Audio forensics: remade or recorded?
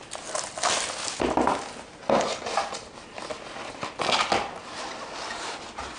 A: recorded